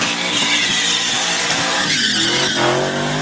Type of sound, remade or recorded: recorded